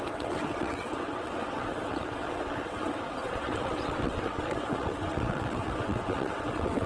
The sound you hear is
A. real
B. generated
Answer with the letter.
B